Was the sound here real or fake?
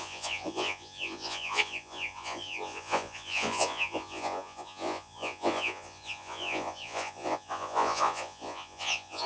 fake